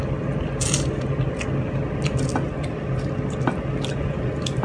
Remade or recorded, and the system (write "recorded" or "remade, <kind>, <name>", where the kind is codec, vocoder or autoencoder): recorded